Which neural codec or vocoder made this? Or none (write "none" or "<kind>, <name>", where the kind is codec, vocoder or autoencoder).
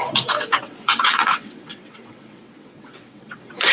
vocoder, WaveNeXt